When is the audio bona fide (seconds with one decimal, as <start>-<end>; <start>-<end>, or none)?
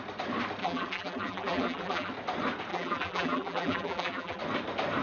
0.0-0.6; 2.1-2.7; 4.4-5.0